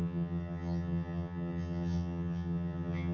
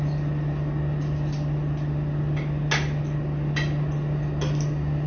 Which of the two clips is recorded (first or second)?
second